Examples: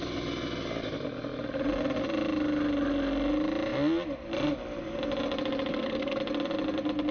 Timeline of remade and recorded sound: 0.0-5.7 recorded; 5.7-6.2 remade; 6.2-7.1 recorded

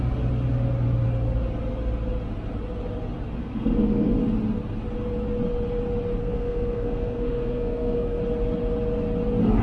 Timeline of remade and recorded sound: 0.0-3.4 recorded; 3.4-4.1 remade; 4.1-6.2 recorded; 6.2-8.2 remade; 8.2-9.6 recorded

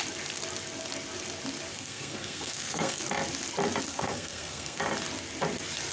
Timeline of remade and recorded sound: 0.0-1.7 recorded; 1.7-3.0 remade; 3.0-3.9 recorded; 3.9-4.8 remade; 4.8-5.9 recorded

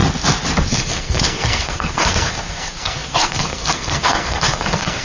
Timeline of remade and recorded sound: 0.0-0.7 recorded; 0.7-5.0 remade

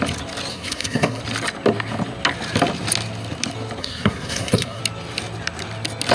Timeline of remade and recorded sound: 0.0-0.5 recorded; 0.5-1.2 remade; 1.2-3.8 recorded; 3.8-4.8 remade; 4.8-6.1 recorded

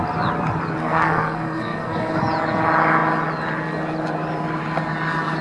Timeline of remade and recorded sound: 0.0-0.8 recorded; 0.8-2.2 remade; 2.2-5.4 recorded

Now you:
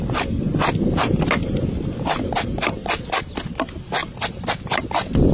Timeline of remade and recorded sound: 0.0-5.3 recorded